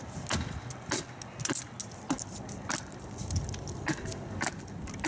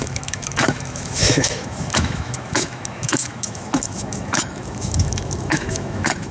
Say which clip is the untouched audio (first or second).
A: first